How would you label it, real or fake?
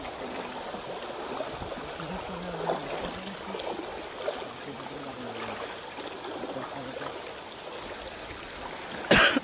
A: real